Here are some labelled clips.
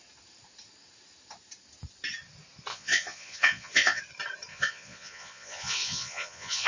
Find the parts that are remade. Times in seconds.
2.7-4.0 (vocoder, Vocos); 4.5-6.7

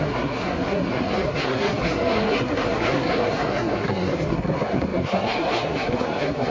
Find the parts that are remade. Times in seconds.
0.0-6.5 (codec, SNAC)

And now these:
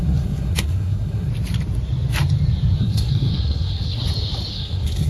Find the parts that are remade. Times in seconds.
0.0-1.3 (codec, SNAC); 2.8-4.0; 4.5-5.1

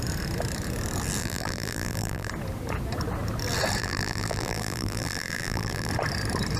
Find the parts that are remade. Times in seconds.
1.2-2.3 (vocoder, BigVGAN v2); 3.8-5.9

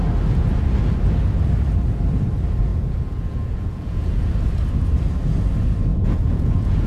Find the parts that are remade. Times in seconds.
2.7-4.3 (vocoder, Vocos); 5.9-6.9

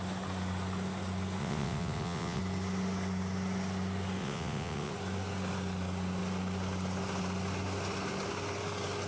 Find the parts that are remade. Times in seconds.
1.4-2.4 (vocoder, WaveNeXt); 4.2-4.9